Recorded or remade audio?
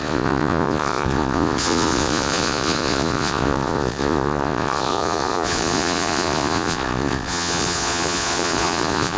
remade